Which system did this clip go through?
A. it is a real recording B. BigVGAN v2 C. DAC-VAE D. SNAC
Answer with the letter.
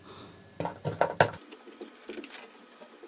A